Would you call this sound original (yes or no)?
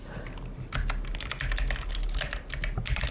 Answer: yes